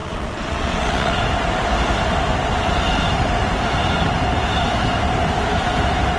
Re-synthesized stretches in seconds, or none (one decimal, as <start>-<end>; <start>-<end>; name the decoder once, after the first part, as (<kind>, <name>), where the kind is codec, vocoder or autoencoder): 0.0-1.2 (vocoder, WaveNeXt)